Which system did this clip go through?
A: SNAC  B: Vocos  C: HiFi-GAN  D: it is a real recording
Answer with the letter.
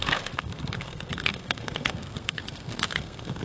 A